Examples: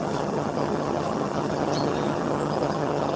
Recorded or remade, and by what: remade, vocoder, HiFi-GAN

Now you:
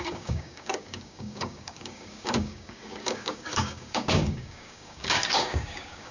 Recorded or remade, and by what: remade, codec, DAC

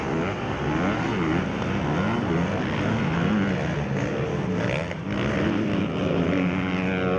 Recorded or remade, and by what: recorded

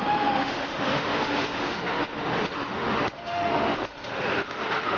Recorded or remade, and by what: remade, autoencoder, DAC-VAE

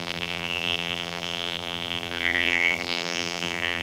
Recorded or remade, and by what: remade, vocoder, BigVGAN v2